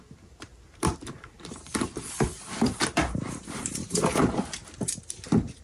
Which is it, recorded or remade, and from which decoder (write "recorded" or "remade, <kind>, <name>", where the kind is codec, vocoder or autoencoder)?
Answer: remade, vocoder, BigVGAN v2